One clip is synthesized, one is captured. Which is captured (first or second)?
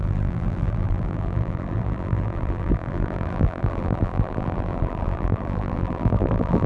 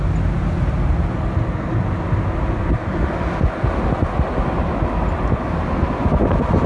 second